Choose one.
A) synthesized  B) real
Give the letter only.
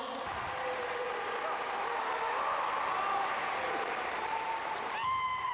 B